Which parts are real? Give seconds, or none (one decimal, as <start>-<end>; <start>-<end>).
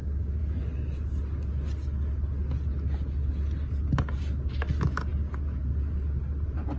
0.0-6.8